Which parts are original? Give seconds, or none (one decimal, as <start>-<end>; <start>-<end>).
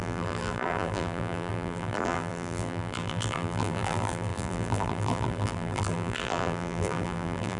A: none